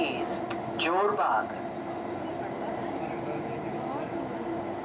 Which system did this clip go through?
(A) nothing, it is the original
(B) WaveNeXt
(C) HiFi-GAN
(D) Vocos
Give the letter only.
A